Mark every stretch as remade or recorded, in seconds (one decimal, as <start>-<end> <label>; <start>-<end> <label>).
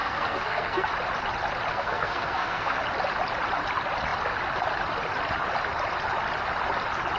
0.0-0.9 remade; 0.9-1.7 recorded; 1.7-2.8 remade; 2.8-7.2 recorded